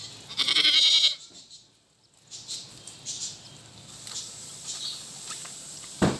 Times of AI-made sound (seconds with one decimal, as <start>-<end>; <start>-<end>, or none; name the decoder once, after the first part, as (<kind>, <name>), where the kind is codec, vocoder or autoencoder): none